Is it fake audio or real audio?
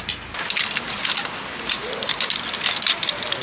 real